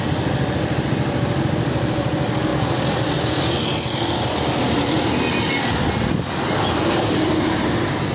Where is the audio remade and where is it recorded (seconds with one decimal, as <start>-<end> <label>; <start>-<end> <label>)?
0.0-8.1 recorded